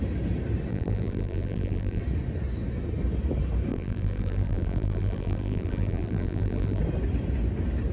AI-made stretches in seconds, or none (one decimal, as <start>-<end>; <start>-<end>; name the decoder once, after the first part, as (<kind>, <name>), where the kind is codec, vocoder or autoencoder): 0.7-2.0 (vocoder, BigVGAN v2); 3.7-6.8